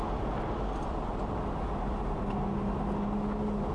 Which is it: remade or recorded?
recorded